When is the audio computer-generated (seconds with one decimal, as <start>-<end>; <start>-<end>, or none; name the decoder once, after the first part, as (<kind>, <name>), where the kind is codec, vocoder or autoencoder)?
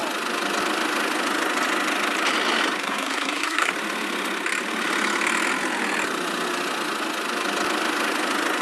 2.8-3.7 (codec, SNAC)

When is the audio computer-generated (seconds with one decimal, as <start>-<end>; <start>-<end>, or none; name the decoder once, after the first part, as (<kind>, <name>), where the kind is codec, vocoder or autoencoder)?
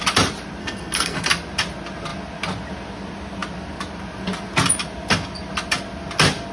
0.6-1.3 (codec, SNAC)